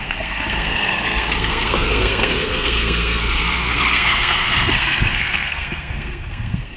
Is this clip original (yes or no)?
no